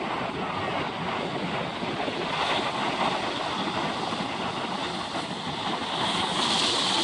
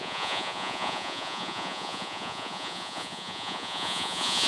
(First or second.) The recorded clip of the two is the first